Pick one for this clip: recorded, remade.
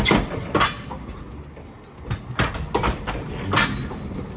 recorded